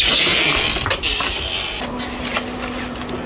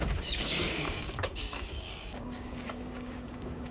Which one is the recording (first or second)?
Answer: first